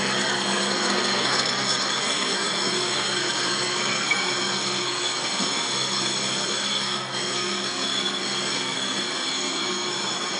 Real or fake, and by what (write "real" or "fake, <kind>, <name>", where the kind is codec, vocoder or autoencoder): fake, codec, SNAC